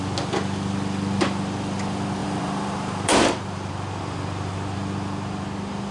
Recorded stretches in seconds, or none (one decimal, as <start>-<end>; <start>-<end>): 0.0-2.2; 3.7-5.9